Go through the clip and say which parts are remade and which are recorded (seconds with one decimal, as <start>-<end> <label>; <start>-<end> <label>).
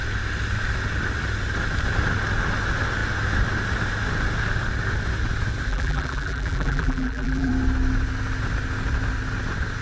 0.0-5.7 recorded; 5.7-7.5 remade; 7.5-9.8 recorded